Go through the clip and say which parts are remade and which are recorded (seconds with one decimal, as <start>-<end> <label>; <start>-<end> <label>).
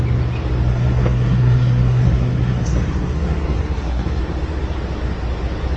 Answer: 0.0-0.7 recorded; 0.7-4.2 remade; 4.2-5.8 recorded